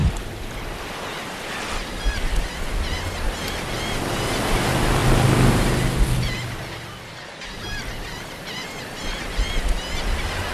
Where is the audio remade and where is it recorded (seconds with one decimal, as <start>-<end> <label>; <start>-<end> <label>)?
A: 0.0-1.5 remade; 1.5-5.0 recorded; 5.0-6.6 remade; 6.6-10.5 recorded